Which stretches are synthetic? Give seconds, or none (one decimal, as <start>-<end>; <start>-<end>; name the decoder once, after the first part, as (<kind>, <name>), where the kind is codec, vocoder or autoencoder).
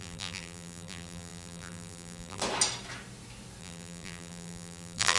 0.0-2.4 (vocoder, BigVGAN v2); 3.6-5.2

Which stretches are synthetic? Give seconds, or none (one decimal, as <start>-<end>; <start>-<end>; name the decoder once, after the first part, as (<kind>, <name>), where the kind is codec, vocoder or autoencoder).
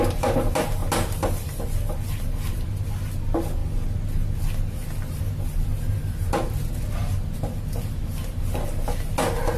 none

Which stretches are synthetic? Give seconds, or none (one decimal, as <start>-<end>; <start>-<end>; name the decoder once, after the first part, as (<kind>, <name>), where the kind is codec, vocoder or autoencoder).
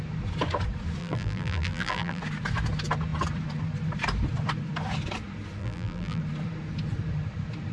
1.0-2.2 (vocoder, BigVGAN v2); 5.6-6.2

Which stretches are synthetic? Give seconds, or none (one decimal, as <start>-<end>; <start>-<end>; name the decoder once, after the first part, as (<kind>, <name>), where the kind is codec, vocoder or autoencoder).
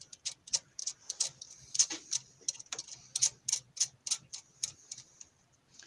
none